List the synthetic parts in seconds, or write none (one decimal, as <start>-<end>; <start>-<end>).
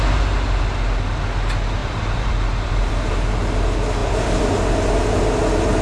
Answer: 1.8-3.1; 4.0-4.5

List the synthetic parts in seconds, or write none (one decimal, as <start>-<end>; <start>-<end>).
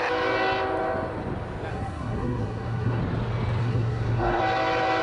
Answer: 1.7-3.0; 3.6-4.4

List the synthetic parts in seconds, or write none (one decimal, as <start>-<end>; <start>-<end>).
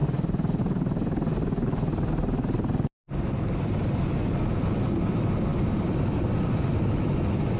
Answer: none